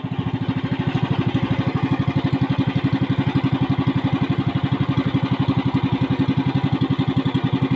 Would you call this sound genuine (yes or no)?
yes